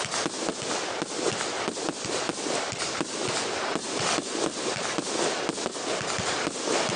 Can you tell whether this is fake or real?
real